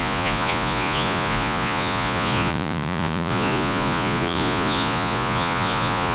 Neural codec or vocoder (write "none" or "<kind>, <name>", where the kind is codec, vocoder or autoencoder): vocoder, Vocos